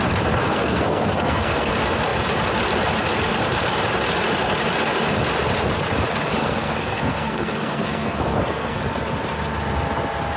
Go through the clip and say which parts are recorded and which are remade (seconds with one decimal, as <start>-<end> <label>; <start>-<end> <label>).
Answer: 0.0-0.4 recorded; 0.4-1.7 remade; 1.7-6.4 recorded; 6.4-8.8 remade; 8.8-10.4 recorded

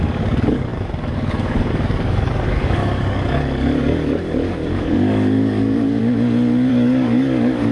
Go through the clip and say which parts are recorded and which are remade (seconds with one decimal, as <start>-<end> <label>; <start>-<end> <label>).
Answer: 0.0-6.0 remade; 6.0-6.7 recorded; 6.7-7.7 remade